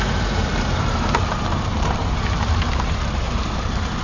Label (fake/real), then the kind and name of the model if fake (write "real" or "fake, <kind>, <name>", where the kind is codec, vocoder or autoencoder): fake, vocoder, BigVGAN v2